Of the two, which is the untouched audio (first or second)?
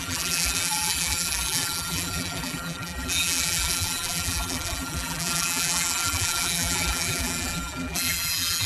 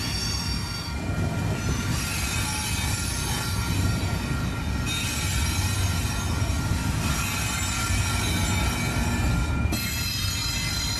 second